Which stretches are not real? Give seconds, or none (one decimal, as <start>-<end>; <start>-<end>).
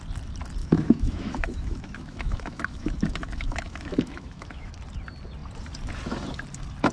0.6-4.7